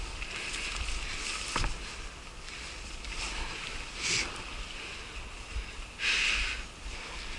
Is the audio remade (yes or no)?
no